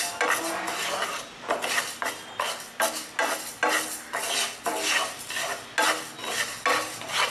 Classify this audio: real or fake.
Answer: real